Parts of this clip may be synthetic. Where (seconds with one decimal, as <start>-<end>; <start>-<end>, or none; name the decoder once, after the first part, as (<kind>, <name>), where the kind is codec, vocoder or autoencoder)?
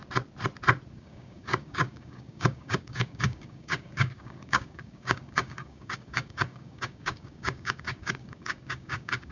1.0-9.3 (codec, DAC)